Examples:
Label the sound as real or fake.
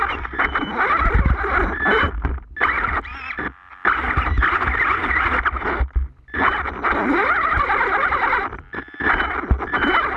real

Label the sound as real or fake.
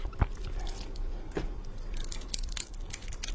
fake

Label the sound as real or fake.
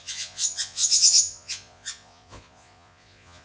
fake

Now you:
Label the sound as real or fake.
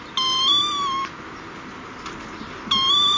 real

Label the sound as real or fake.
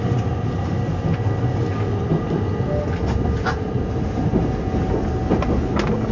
real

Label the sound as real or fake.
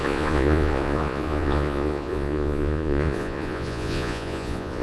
fake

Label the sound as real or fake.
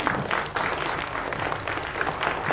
real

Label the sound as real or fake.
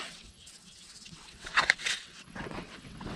fake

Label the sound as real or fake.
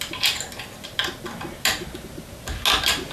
real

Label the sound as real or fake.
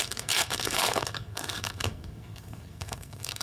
fake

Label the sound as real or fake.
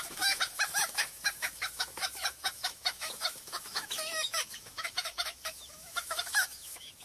fake